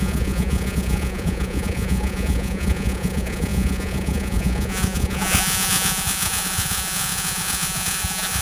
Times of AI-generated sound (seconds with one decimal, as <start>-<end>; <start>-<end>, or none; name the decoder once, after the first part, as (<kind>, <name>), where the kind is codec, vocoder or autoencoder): 0.0-8.4 (vocoder, Vocos)

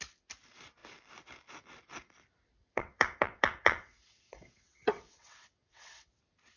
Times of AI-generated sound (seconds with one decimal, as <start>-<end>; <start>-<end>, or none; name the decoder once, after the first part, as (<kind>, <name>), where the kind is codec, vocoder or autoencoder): 2.6-6.1 (vocoder, WaveNeXt)

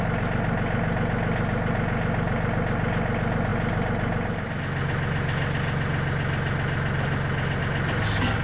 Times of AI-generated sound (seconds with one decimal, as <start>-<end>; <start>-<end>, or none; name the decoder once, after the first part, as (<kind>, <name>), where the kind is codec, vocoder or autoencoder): none

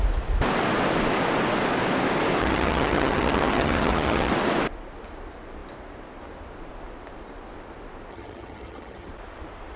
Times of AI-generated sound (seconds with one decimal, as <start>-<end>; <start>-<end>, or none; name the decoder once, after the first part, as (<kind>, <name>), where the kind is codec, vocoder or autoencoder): 2.4-4.3 (vocoder, HiFi-GAN); 8.1-9.1

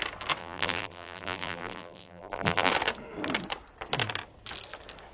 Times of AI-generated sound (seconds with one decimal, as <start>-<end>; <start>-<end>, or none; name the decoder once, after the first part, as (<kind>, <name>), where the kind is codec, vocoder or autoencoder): 0.4-2.7 (vocoder, BigVGAN v2)

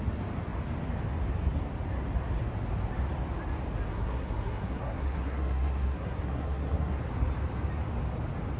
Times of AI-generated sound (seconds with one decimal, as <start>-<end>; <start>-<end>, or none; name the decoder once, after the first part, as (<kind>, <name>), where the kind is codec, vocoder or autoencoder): 3.9-7.0 (codec, SNAC)

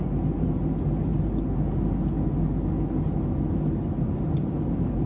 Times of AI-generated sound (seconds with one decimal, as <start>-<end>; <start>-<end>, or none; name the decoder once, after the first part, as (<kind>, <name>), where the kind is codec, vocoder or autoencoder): none